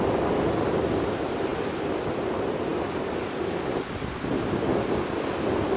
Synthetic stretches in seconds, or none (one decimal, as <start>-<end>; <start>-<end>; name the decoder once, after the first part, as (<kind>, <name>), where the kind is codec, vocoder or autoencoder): none

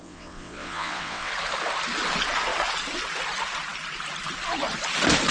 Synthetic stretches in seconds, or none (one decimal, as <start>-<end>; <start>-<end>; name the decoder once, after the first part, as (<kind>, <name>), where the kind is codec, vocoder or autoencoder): 0.0-1.3 (vocoder, WaveNeXt)

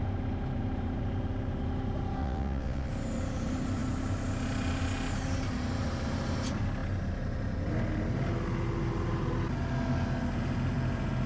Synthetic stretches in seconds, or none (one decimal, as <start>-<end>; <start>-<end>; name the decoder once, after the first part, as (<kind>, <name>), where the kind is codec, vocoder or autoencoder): 2.2-2.9 (vocoder, WaveNeXt)

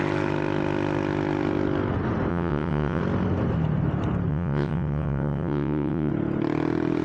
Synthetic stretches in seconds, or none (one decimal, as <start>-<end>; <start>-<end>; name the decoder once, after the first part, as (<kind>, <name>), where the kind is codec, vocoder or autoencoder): 2.3-3.0 (vocoder, WaveNeXt); 4.3-6.1

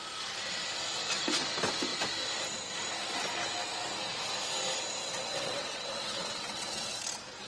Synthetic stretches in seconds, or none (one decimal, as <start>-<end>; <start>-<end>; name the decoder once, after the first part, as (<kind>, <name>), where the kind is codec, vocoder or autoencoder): 5.0-7.0 (vocoder, WaveNeXt)

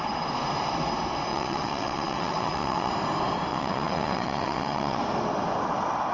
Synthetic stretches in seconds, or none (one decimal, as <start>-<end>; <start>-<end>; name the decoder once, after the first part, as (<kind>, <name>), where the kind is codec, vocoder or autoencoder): 1.3-2.9 (vocoder, WaveNeXt); 3.5-5.0